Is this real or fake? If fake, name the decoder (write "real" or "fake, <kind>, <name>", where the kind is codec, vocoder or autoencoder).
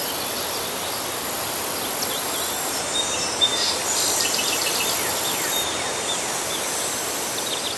fake, vocoder, BigVGAN v2